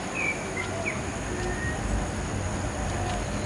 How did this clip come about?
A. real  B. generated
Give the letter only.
A